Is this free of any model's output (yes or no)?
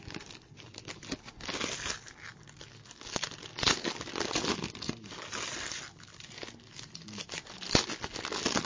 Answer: yes